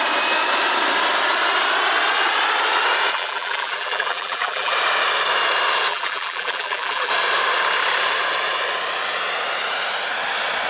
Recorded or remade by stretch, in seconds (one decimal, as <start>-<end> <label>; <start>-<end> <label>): 0.0-3.1 recorded; 3.1-4.7 remade; 4.7-5.9 recorded; 5.9-7.1 remade; 7.1-10.7 recorded